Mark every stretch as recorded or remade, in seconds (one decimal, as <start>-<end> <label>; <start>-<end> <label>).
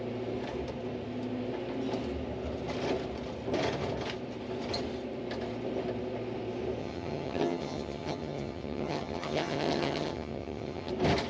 0.0-6.8 recorded; 6.8-10.9 remade; 10.9-11.3 recorded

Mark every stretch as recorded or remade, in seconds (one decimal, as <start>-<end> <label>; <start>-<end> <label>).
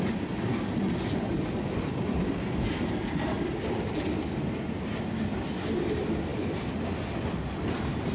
0.0-8.1 recorded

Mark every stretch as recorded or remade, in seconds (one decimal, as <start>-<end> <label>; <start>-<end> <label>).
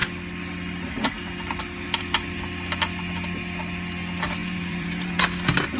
0.0-4.4 recorded; 4.4-5.2 remade; 5.2-5.8 recorded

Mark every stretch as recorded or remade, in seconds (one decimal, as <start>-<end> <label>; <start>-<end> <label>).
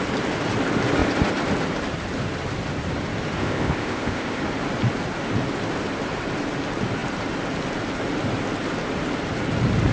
0.0-3.4 recorded; 3.4-4.4 remade; 4.4-9.9 recorded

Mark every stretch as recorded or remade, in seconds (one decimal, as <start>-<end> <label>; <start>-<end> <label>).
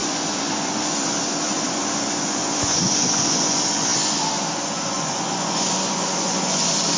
0.0-7.0 remade